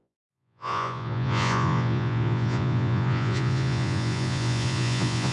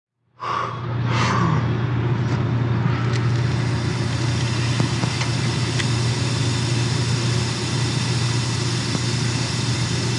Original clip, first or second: second